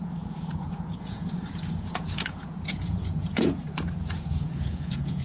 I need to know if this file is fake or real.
fake